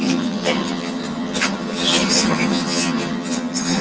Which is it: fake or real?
fake